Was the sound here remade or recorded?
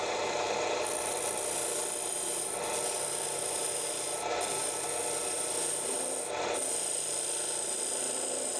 recorded